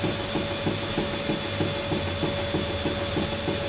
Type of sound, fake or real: real